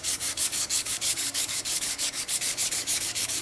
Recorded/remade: remade